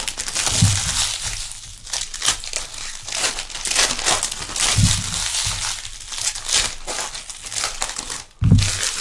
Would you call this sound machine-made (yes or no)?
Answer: no